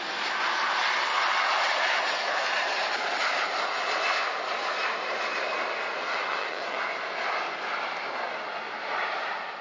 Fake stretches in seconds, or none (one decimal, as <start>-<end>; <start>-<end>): 1.1-2.8; 6.0-6.8